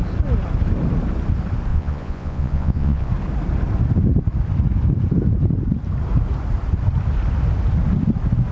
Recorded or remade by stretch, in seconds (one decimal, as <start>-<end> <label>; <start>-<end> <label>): 0.0-1.7 recorded; 1.7-3.1 remade; 3.1-8.5 recorded